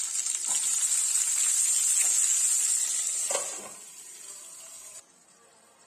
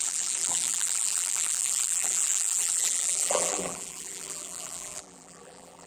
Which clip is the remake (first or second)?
second